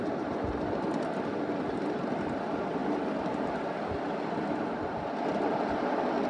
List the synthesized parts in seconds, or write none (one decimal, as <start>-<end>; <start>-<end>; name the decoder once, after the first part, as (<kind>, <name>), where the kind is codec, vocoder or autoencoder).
none